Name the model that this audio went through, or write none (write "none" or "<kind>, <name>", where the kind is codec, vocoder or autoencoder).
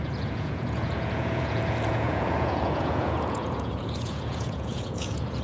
vocoder, Vocos